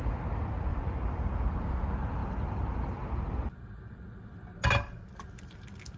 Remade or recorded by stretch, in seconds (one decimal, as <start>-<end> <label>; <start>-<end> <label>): 0.0-0.7 recorded; 0.7-1.8 remade; 1.8-2.2 recorded; 2.2-3.1 remade; 3.1-6.0 recorded